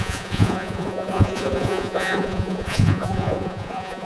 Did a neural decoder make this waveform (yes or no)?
yes